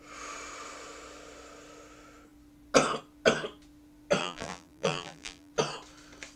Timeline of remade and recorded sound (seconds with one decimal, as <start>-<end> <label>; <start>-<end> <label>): 0.0-4.2 recorded; 4.2-5.5 remade; 5.5-6.4 recorded